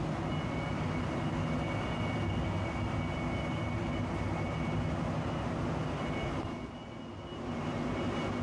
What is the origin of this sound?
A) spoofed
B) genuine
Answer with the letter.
B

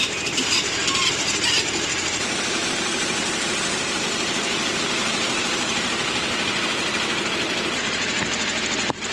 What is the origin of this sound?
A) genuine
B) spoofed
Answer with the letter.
B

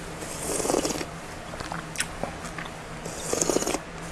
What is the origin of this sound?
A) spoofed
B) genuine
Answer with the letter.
B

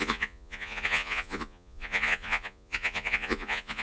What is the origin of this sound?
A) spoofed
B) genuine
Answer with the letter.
A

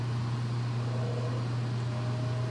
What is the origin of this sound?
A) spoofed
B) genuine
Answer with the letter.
B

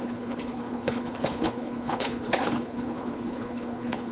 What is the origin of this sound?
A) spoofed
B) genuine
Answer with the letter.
A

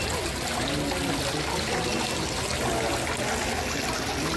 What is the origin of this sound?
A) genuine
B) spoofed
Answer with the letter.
A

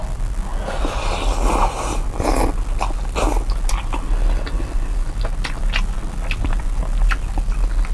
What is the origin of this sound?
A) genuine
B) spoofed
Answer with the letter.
A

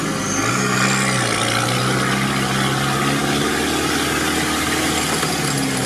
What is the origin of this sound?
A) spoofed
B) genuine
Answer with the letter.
B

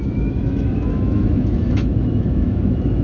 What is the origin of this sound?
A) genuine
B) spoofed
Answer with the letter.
B